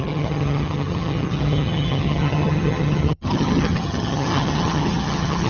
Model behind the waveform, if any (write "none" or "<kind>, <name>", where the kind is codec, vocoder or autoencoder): vocoder, HiFi-GAN